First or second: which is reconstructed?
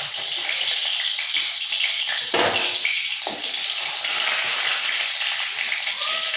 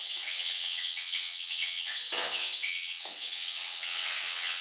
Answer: second